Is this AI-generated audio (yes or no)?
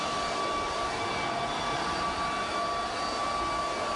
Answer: no